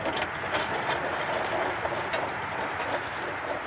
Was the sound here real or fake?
real